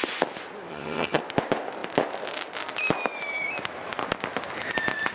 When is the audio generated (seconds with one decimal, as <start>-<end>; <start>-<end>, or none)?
0.7-1.2